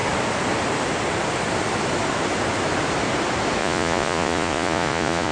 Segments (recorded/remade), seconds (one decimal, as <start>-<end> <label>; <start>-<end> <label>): 0.0-3.6 recorded; 3.6-5.3 remade